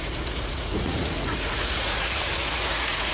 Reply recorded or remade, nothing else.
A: remade